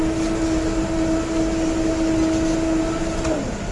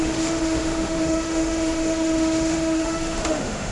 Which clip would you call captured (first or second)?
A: first